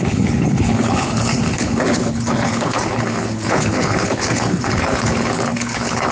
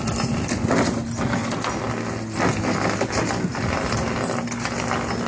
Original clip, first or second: second